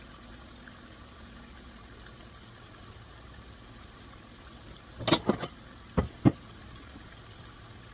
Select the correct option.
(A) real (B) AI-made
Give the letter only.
A